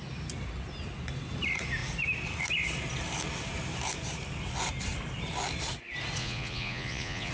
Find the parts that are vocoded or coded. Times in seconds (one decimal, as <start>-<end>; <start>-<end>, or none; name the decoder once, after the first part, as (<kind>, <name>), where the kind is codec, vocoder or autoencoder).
6.2-7.3 (vocoder, Vocos)